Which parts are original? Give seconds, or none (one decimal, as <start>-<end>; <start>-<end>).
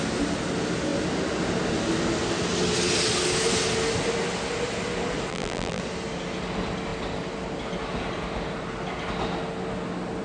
0.0-5.3; 5.8-10.2